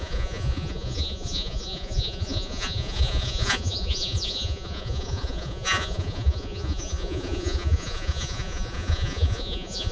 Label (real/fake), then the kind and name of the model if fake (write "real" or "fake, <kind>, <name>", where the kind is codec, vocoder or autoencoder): fake, vocoder, Vocos